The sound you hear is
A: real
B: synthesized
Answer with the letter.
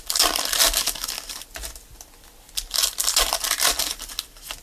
A